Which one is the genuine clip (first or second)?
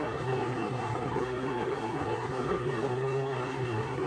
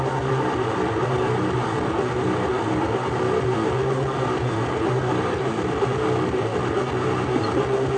second